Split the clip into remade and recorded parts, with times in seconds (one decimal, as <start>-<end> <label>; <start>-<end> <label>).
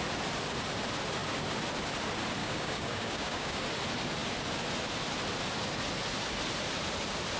0.0-2.4 recorded; 2.4-3.7 remade; 3.7-7.4 recorded